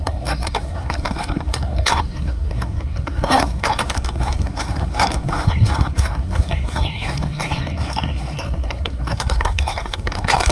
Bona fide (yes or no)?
no